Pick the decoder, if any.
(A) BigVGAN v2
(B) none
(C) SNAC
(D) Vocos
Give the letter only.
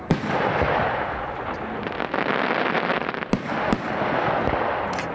B